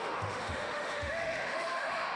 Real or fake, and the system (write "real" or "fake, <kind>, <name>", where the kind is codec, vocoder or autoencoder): fake, autoencoder, DAC-VAE